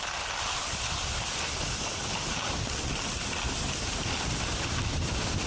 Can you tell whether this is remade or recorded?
recorded